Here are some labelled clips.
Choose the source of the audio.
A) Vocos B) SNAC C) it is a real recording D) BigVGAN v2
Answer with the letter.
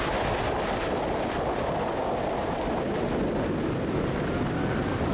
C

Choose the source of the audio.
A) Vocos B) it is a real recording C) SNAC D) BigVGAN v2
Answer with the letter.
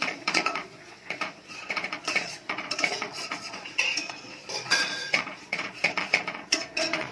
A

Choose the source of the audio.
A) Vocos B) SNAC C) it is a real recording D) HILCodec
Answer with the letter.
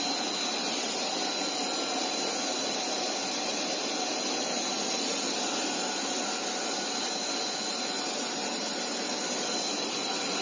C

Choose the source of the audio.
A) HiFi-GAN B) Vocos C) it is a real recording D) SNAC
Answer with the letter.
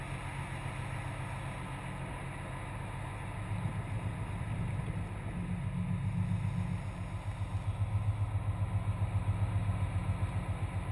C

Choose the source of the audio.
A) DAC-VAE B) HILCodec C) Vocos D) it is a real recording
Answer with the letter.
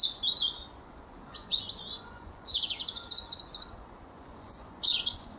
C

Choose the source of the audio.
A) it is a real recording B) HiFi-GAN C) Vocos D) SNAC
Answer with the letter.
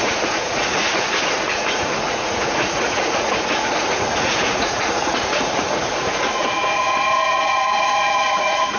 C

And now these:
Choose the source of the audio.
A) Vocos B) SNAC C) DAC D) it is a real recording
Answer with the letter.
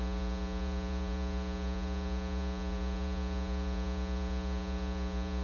A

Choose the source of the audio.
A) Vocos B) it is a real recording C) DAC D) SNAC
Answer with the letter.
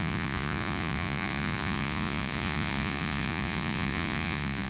A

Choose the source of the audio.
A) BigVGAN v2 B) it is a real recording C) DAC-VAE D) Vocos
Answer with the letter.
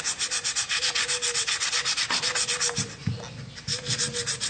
B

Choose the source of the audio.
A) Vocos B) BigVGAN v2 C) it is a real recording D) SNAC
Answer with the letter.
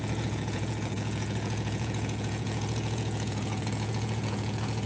A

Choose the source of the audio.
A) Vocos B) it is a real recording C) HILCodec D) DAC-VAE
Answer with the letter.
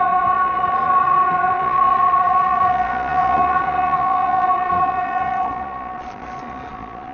A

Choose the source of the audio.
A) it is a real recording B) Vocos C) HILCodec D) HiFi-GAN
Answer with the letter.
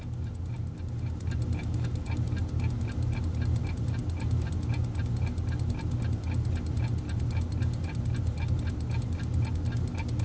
A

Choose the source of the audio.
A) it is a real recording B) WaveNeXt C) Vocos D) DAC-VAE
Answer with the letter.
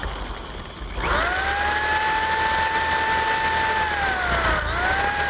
A